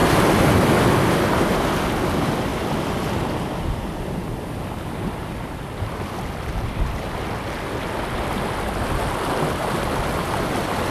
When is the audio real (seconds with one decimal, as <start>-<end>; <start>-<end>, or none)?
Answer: 0.0-10.9